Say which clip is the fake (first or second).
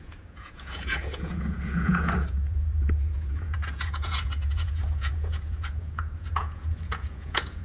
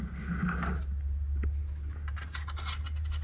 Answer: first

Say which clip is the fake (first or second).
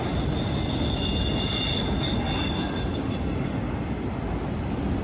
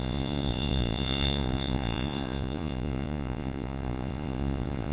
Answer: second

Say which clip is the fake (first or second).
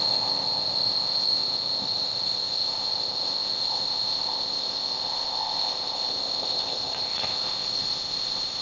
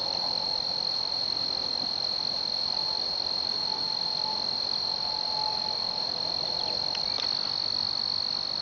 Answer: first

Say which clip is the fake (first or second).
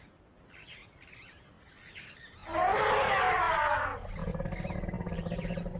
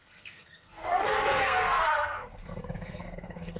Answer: second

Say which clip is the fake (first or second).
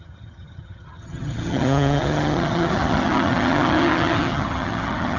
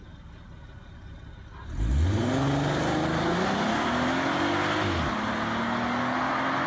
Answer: first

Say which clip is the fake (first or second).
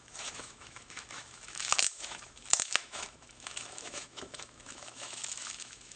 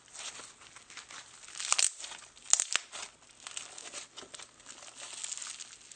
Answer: first